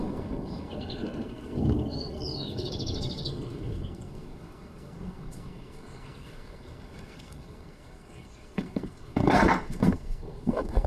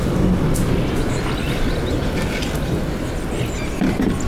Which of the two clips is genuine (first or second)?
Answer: second